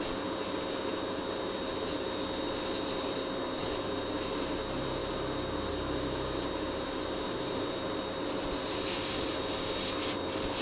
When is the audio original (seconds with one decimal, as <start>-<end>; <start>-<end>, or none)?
0.0-10.6